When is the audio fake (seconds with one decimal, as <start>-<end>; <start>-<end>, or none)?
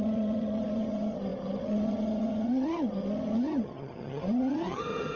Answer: 0.0-5.2